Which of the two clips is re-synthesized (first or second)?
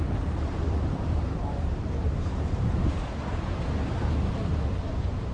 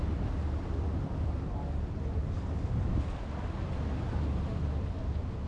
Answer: first